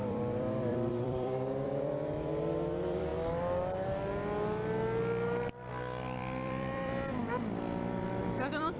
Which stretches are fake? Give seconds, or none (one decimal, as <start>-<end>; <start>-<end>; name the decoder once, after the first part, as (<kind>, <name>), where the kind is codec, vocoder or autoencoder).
0.0-3.1 (vocoder, BigVGAN v2); 5.7-7.2; 8.2-8.8